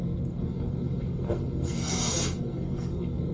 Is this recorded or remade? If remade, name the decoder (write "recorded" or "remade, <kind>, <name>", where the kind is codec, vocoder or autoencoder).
remade, codec, SNAC